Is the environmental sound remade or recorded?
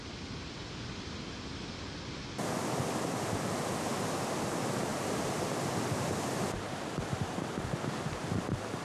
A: recorded